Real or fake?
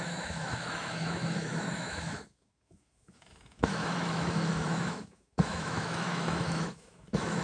fake